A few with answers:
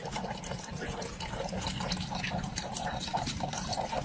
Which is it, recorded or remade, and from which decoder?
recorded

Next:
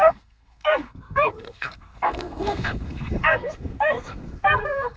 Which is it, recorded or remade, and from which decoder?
remade, codec, SNAC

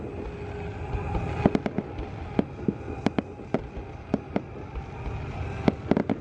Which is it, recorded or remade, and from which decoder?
recorded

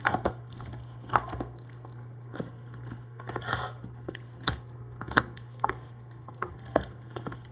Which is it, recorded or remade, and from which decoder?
remade, codec, SNAC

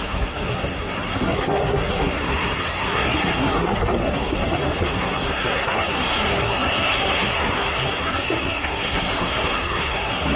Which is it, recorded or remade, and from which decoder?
remade, codec, SNAC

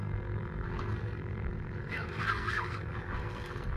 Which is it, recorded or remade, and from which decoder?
remade, codec, SNAC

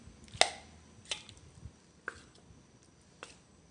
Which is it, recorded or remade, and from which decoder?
recorded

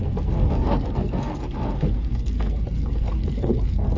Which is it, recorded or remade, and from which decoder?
remade, codec, SNAC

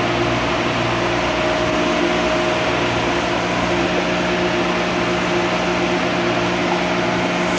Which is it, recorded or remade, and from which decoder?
recorded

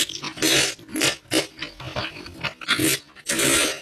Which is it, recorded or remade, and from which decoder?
recorded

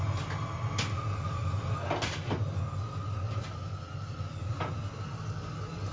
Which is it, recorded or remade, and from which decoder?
recorded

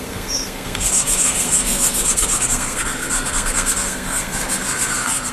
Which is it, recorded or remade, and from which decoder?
remade, codec, SNAC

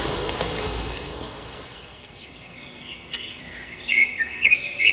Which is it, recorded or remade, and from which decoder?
remade, codec, SNAC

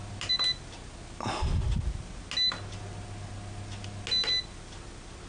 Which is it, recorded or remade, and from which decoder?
recorded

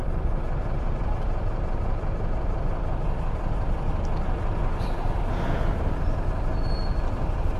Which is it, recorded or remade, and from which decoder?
recorded